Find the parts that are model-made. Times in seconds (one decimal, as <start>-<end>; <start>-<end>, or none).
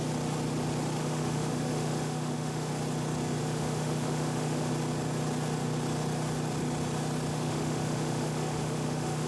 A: 1.0-2.7; 3.4-4.7; 7.3-9.3